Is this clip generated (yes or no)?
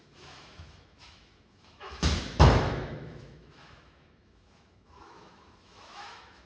yes